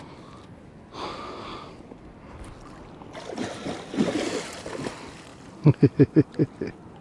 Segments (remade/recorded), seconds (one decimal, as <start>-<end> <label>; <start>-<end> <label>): 0.0-7.0 recorded